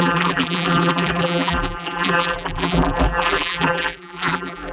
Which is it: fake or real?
fake